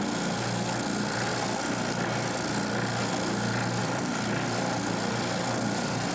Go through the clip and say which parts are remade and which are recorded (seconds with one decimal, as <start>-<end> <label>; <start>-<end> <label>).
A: 0.0-3.8 recorded; 3.8-6.1 remade